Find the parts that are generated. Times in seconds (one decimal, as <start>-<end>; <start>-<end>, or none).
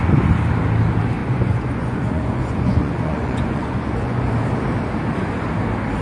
1.2-4.3